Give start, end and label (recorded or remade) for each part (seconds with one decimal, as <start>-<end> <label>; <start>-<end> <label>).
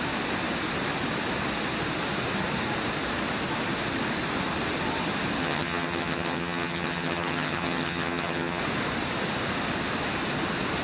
0.0-5.4 recorded; 5.4-8.6 remade; 8.6-10.8 recorded